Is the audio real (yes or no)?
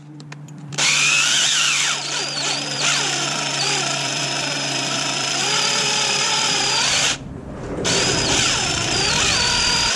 no